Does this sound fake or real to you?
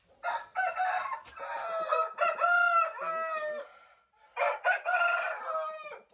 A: real